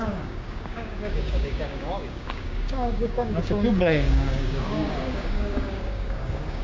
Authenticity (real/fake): fake